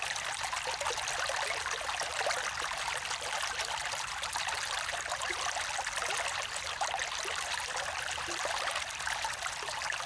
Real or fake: real